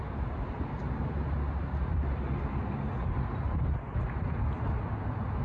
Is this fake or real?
real